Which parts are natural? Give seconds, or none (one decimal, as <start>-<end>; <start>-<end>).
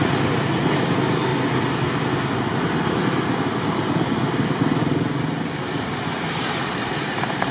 1.3-5.8